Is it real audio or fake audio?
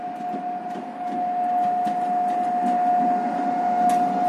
real